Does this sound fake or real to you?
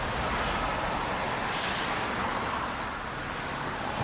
real